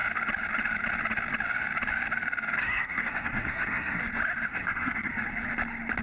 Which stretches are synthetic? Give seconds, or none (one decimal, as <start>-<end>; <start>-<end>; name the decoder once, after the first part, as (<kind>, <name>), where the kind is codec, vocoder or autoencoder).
2.6-4.0 (codec, SNAC); 4.5-5.1